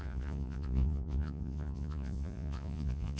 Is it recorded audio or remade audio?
remade